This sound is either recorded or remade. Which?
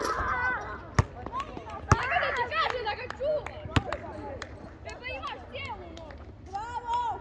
recorded